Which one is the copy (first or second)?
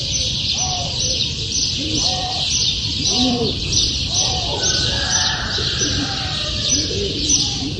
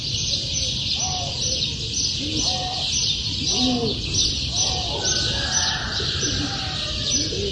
first